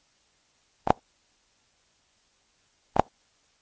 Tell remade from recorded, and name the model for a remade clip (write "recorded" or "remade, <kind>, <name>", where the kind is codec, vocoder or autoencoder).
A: remade, vocoder, Vocos